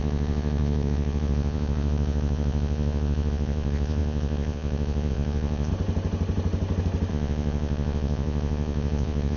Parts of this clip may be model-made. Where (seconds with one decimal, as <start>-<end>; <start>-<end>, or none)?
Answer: 0.0-5.7; 7.1-9.4

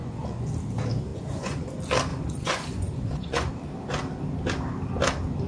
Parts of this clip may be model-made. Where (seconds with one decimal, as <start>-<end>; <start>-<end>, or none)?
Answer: 0.0-0.5; 1.1-1.7; 2.1-3.5

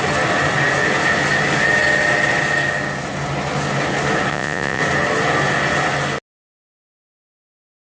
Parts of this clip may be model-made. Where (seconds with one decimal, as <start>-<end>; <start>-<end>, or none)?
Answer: 4.3-4.8

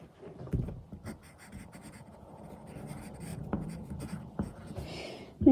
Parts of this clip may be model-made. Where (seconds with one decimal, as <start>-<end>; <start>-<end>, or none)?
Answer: 1.2-2.4; 3.3-5.5

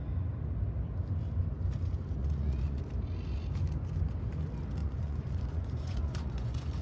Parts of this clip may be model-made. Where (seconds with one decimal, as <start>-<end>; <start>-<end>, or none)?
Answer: 2.2-2.8; 4.8-6.8

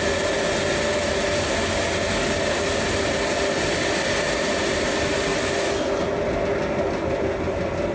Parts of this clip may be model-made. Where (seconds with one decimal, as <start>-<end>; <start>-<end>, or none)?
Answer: none

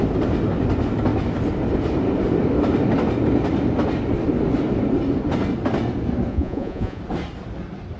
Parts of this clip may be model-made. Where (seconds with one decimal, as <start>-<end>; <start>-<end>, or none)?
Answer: 6.3-7.0

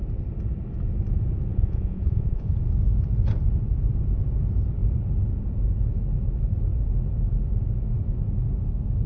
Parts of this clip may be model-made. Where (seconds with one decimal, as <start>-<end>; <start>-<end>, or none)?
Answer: 1.5-2.5